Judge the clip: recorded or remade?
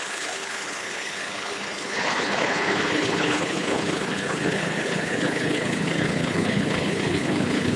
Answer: remade